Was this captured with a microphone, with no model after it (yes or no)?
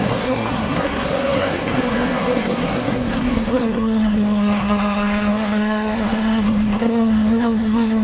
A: no